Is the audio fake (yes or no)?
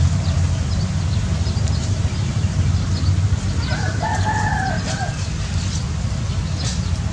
no